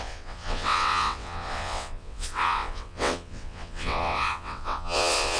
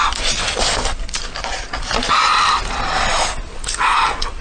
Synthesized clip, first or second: first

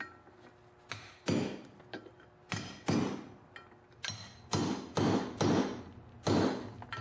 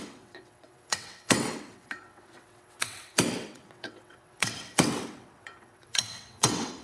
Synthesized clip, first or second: second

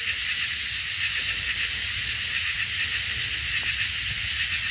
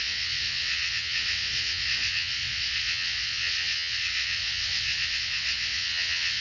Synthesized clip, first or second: second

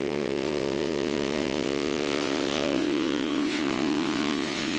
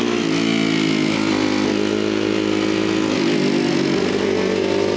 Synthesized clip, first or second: first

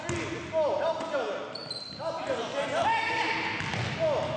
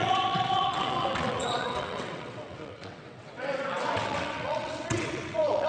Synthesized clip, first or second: second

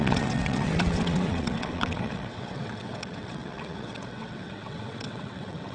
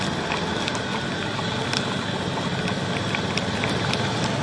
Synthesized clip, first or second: first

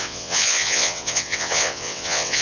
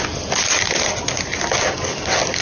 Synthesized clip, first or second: first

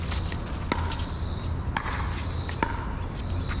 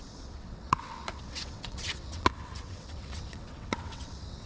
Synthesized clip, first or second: second